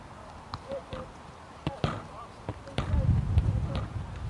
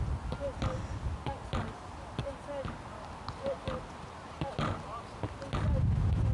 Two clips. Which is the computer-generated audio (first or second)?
first